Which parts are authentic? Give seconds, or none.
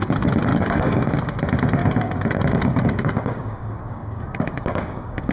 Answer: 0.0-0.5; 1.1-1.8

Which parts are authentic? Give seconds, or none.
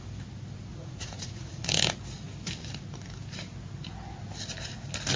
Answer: 0.0-0.7; 1.7-5.2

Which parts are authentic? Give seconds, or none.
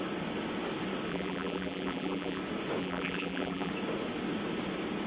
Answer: 0.0-1.1; 2.4-2.8; 3.7-5.1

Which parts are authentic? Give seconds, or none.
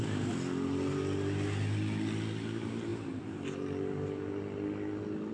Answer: 0.0-5.3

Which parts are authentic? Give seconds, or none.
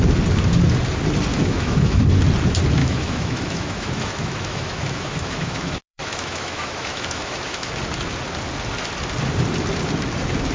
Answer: 0.0-1.3; 2.0-2.8; 7.7-10.5